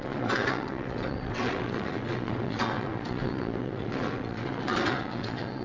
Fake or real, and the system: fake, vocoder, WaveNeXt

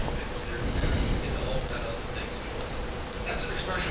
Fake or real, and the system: real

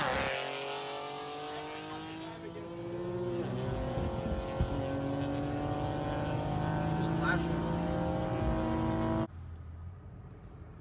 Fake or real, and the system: real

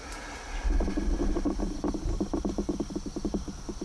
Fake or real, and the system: real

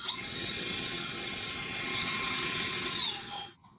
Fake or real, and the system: fake, vocoder, WaveNeXt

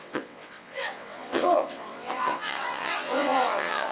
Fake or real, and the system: fake, vocoder, WaveNeXt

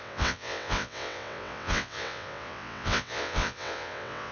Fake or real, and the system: fake, vocoder, WaveNeXt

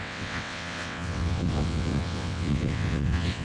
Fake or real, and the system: fake, vocoder, WaveNeXt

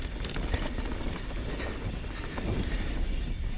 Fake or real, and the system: real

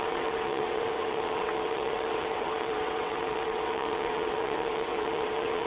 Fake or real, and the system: fake, vocoder, WaveNeXt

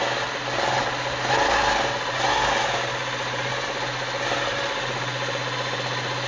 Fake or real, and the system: real